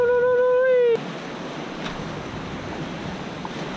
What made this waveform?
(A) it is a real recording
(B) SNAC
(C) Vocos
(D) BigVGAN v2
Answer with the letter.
A